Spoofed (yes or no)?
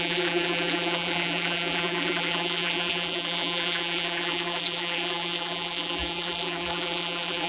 yes